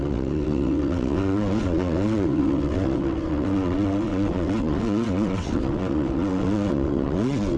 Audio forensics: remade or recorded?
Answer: remade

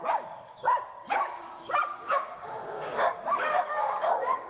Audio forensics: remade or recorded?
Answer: remade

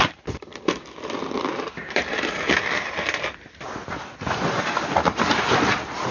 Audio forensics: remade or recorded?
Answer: remade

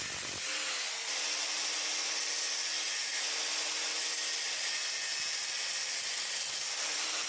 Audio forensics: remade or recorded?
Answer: recorded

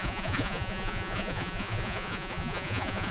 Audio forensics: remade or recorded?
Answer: remade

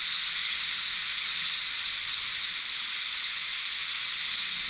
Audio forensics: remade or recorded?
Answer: recorded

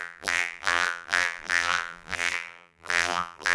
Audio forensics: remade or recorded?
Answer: remade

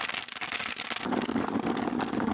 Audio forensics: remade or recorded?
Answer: recorded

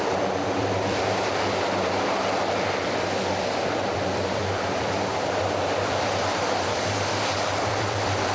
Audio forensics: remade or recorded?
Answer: remade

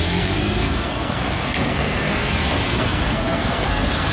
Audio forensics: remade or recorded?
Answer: remade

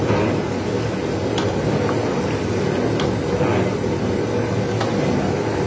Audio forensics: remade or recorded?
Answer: recorded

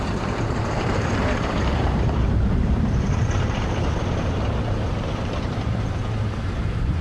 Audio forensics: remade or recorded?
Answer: remade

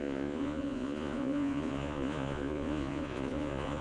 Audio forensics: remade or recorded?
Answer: remade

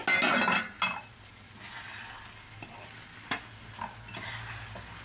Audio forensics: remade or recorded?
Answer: recorded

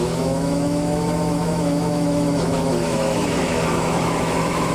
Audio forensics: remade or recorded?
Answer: remade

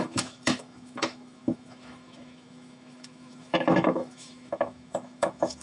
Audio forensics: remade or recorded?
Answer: remade